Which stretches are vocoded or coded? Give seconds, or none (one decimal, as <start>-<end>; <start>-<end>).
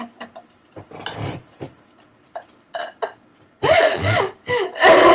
3.3-4.2